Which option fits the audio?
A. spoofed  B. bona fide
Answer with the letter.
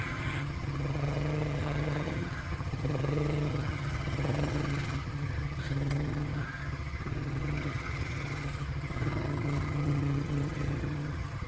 A